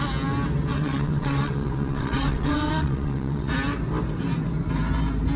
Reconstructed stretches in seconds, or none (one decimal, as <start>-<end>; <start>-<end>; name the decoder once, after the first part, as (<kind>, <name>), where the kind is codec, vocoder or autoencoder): 0.7-3.5 (vocoder, WaveNeXt)